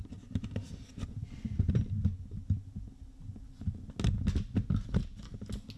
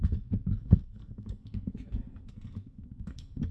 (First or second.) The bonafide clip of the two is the first